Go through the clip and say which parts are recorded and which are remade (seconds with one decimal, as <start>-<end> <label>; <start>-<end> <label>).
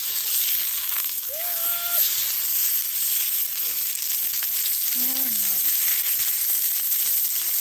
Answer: 0.0-0.8 recorded; 0.8-2.1 remade; 2.1-7.6 recorded